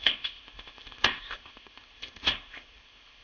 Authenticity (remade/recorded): remade